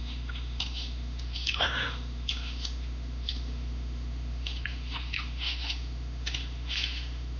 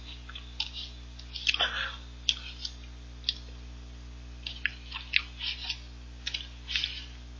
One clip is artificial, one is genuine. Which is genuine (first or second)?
second